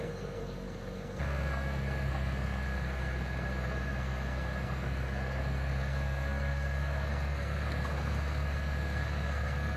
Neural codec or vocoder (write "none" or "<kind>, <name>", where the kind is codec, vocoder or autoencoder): codec, SNAC